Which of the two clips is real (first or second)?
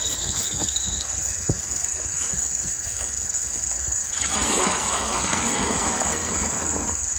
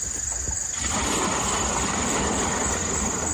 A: second